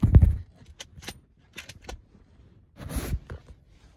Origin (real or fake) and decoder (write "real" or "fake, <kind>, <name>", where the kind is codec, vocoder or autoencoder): real